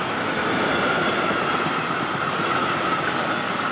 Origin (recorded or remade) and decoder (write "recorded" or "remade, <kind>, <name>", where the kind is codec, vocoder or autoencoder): recorded